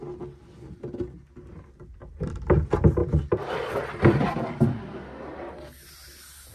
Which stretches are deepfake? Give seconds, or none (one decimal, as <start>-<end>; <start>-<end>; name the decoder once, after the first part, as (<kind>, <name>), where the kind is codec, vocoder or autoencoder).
3.0-5.1 (vocoder, BigVGAN v2)